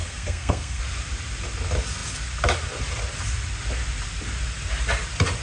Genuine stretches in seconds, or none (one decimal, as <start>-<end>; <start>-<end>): 0.8-5.4